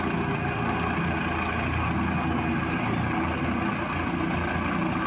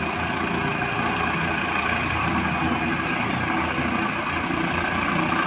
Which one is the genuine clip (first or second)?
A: first